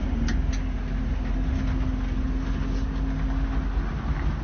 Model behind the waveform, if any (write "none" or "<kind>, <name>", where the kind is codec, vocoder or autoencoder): none